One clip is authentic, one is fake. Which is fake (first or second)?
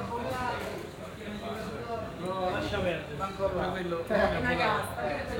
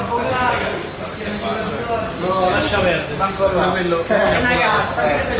first